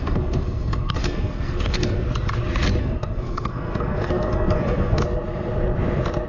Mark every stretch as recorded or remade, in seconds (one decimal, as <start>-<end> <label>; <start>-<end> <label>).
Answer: 0.0-2.0 remade; 2.0-2.8 recorded; 2.8-5.0 remade; 5.0-6.3 recorded